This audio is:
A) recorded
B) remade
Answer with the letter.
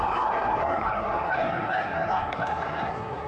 B